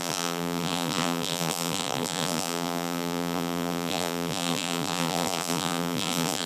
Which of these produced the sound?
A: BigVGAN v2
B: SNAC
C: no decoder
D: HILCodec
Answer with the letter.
A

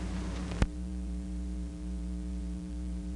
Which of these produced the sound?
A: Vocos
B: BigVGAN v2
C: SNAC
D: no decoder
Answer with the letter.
B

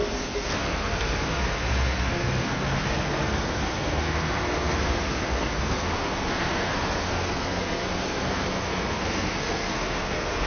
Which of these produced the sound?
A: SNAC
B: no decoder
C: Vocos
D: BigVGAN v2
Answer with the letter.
A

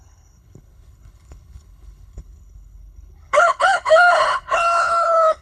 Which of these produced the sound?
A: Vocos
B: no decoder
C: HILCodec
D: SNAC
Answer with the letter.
C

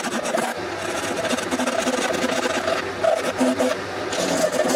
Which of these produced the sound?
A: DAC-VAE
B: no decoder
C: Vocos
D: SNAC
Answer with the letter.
B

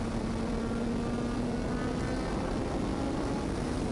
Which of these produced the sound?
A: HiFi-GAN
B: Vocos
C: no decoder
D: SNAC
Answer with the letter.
C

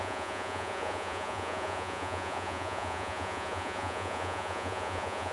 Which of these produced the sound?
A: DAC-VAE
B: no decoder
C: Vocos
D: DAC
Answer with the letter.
C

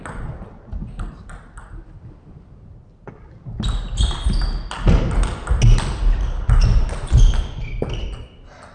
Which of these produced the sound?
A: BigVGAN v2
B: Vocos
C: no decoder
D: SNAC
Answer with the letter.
C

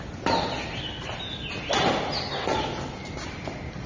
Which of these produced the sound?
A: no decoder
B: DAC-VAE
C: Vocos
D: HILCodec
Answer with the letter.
A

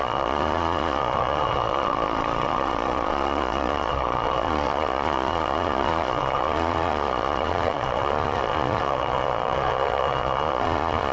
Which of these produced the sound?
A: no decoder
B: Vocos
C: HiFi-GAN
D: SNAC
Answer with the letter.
B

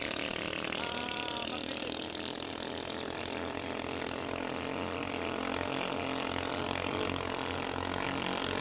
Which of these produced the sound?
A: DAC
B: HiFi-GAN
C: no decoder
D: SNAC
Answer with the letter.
C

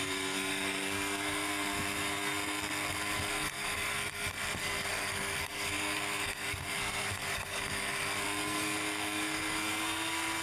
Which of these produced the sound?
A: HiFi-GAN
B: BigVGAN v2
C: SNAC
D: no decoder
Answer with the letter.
C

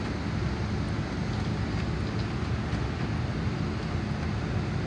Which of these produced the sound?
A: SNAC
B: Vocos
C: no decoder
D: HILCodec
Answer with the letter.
C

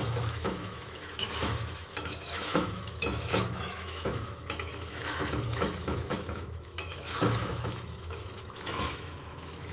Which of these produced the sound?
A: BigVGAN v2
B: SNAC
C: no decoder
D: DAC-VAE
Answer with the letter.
D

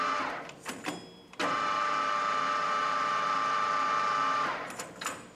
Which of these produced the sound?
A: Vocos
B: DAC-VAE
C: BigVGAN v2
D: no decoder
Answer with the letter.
D